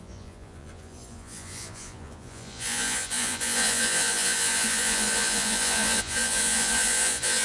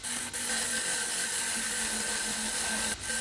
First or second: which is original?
second